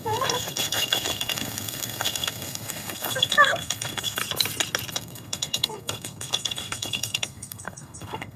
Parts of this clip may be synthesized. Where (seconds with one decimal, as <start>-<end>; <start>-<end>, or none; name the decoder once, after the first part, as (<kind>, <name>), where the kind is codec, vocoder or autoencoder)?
0.0-4.2 (codec, SNAC); 4.9-8.4